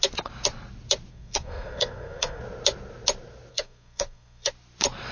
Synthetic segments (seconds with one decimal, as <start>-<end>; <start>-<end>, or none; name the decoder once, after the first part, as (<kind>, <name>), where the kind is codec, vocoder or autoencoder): 1.1-2.4 (codec, SNAC); 3.5-4.5